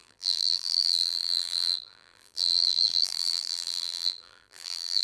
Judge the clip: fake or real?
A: fake